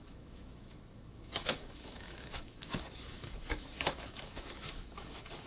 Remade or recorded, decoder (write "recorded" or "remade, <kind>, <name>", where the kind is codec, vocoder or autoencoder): remade, autoencoder, DAC-VAE